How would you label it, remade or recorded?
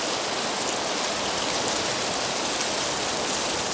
recorded